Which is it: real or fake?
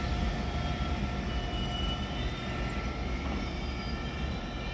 real